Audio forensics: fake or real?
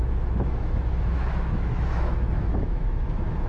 fake